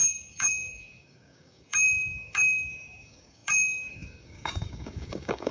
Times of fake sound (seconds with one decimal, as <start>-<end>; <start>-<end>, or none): 0.0-5.5